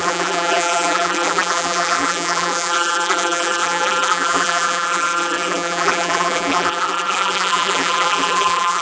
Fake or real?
fake